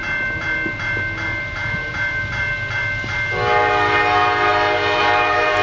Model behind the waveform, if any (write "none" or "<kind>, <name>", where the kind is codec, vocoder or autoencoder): none